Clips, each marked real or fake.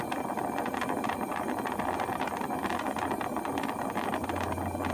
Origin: real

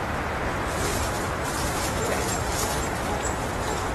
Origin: fake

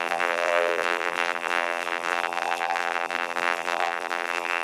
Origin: fake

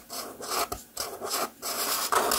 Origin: real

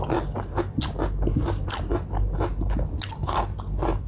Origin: real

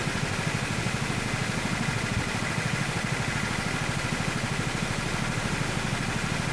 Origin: real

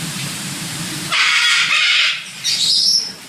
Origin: fake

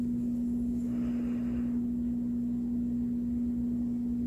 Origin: real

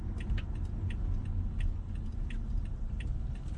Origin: real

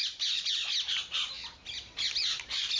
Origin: real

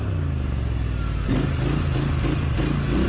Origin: real